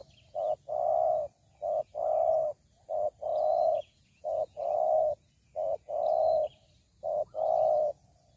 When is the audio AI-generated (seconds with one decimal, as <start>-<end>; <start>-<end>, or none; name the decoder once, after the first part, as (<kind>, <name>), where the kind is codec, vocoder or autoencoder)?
3.3-5.0 (vocoder, Vocos)